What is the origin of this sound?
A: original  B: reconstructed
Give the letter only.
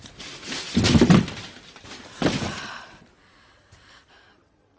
A